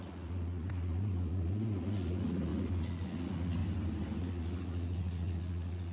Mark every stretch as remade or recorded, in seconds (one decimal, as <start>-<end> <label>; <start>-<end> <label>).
0.0-3.6 remade; 3.6-4.2 recorded; 4.2-5.9 remade